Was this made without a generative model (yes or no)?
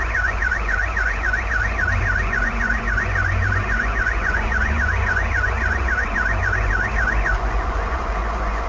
no